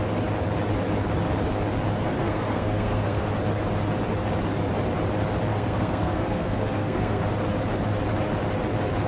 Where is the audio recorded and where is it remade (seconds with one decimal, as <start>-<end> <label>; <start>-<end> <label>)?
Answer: 0.0-2.2 recorded; 2.2-3.3 remade; 3.3-5.5 recorded; 5.5-7.2 remade; 7.2-9.1 recorded